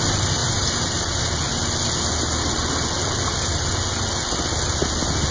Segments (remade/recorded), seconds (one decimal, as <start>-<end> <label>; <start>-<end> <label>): 0.0-0.4 recorded; 0.4-1.0 remade; 1.0-5.3 recorded